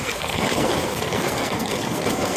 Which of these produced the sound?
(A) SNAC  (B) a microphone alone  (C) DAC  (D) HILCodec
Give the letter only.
A